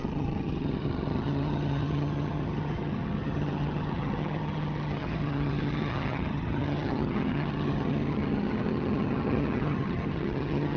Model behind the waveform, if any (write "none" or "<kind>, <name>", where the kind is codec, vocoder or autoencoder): vocoder, HiFi-GAN